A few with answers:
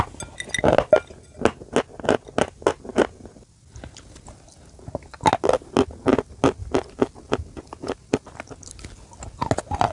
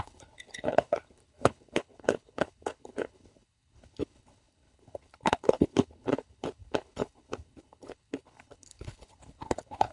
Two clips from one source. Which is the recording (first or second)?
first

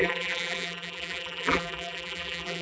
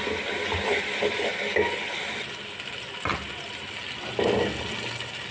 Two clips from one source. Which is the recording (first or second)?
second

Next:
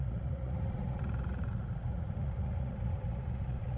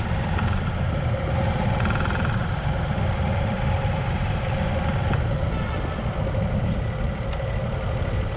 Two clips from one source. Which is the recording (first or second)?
second